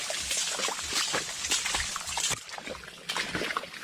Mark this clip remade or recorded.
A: recorded